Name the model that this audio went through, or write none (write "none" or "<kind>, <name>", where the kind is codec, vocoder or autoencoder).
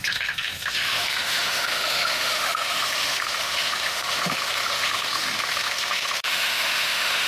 autoencoder, DAC-VAE